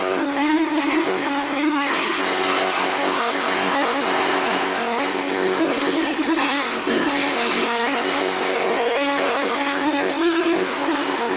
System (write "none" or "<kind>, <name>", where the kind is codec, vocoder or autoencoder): codec, SNAC